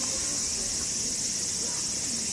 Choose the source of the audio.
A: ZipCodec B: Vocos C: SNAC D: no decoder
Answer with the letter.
D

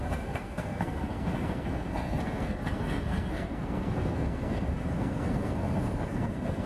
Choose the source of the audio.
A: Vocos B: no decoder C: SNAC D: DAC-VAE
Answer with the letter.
C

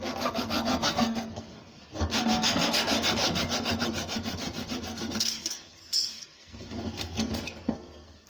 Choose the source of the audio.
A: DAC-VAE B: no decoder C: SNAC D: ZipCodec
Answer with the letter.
C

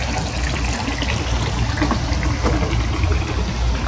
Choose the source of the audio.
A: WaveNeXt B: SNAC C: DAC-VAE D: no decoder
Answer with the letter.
D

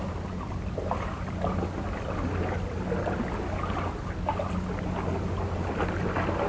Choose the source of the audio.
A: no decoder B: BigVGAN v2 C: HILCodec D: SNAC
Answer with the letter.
A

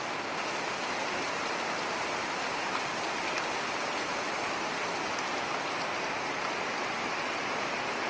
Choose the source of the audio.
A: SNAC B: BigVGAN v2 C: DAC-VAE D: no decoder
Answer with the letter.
D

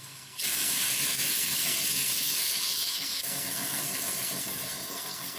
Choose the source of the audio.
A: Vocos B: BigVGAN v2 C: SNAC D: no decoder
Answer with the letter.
C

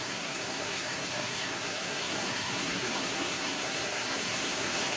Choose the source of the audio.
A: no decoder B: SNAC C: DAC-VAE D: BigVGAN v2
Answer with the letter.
B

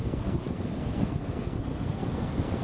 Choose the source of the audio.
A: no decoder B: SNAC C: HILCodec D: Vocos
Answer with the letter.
B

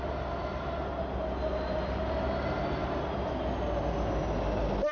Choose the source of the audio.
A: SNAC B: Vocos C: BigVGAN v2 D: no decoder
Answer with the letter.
D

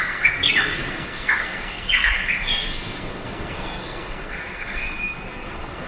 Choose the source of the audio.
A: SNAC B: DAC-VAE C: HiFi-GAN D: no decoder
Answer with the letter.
A